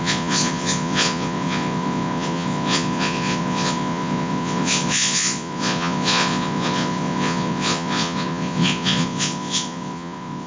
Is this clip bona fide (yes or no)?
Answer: no